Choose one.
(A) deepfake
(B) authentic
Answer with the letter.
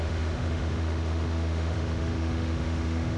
A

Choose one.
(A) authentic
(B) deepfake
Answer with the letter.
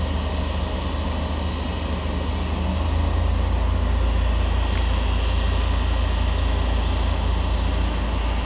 A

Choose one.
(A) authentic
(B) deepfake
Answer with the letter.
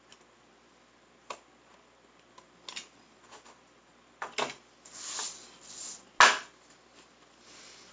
A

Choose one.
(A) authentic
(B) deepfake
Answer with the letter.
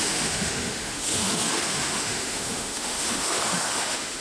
B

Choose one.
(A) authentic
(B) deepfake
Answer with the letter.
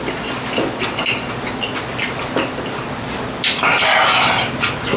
A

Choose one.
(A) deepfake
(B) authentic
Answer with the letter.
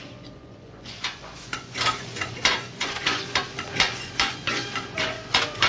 A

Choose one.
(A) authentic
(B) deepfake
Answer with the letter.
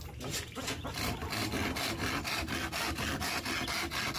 A